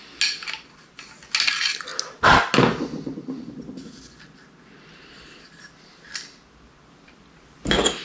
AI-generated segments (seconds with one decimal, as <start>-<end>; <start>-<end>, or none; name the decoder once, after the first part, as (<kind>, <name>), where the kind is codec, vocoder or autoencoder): none